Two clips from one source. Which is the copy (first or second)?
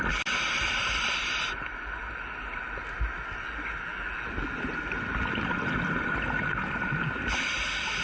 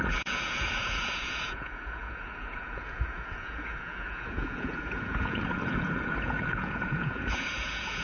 second